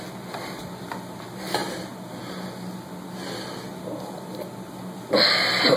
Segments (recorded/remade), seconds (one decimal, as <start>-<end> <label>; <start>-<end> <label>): 0.0-5.8 recorded